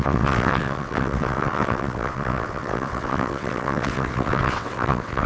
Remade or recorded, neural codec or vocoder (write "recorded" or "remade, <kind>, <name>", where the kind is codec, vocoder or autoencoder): remade, vocoder, WaveNeXt